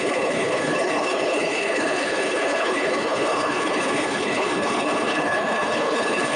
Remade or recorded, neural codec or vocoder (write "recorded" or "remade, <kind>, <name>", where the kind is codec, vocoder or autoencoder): remade, codec, HILCodec